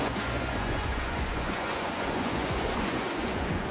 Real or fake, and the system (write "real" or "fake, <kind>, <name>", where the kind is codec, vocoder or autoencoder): fake, vocoder, Vocos